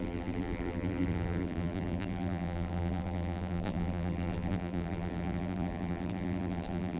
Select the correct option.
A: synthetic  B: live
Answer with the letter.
A